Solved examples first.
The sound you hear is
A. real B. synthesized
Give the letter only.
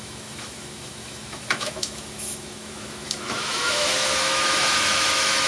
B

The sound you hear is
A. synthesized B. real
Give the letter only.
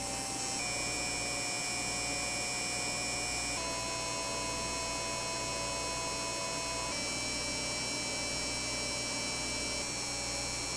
B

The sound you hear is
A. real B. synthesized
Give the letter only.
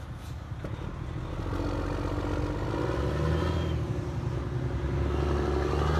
A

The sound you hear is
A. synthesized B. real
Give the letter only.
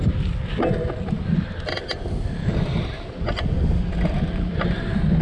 B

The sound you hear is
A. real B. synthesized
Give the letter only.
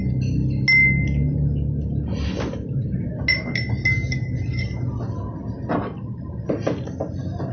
A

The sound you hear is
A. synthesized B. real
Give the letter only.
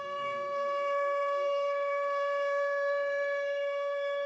A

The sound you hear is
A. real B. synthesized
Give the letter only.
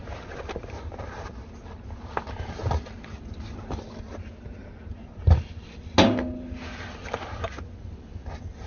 A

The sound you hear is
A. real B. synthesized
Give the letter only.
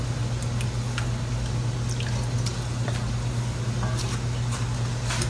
A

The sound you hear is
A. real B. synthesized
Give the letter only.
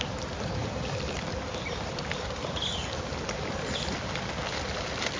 A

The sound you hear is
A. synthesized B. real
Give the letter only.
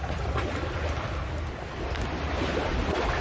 B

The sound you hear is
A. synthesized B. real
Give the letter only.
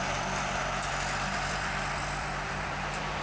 A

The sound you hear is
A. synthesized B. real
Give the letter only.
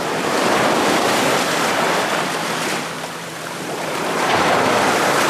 A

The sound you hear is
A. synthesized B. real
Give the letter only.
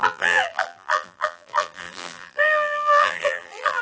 A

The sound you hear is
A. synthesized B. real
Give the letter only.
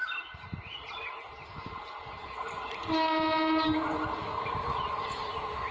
B